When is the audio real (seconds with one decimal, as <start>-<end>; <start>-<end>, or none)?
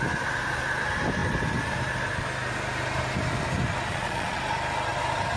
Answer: 0.0-3.9; 4.4-5.4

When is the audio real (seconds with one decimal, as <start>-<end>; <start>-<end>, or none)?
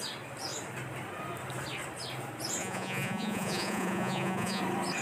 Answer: 0.0-2.6; 4.6-5.0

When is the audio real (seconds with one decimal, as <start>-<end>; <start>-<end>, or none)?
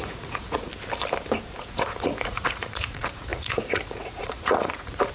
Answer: 0.7-1.6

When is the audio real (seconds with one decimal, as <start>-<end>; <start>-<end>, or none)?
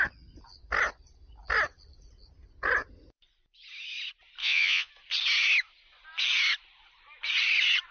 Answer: 0.0-4.4; 4.9-7.9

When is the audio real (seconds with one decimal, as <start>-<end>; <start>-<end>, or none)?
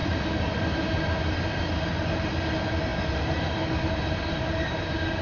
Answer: 0.0-5.2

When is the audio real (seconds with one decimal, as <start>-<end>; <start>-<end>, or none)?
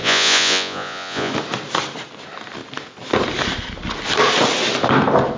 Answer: 1.3-5.4